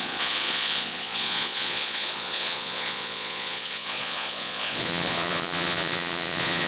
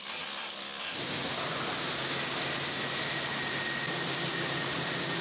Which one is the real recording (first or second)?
second